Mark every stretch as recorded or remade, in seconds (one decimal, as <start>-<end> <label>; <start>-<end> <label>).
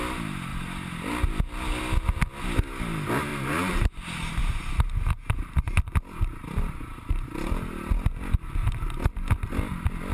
0.0-3.3 recorded; 3.3-3.9 remade; 3.9-10.1 recorded